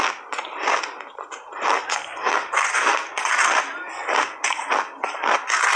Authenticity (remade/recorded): recorded